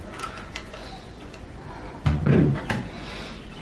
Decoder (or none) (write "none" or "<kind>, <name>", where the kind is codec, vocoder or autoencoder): vocoder, Vocos